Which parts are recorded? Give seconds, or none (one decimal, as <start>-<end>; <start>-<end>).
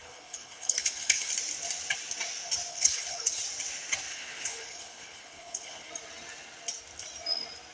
1.3-2.7; 3.4-4.1; 5.9-7.7